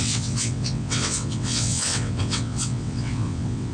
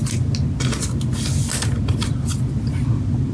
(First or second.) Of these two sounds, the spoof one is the first